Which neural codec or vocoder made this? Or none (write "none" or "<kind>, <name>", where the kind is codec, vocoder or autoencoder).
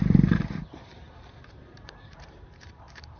vocoder, BigVGAN v2